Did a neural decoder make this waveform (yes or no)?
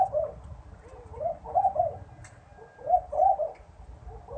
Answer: no